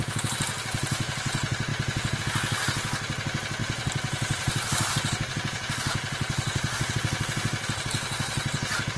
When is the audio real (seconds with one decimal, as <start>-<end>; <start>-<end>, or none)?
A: 0.0-9.0